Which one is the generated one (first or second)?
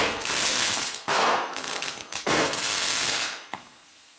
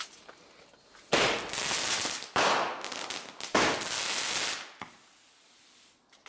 first